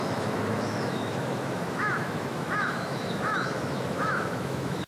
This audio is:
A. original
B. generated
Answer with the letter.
B